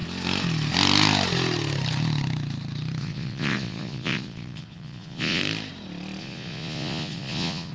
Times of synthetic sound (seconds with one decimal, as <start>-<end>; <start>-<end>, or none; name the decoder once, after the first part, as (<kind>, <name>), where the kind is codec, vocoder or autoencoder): 3.0-5.4 (vocoder, Vocos); 6.2-7.7